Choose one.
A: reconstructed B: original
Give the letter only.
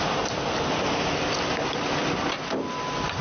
B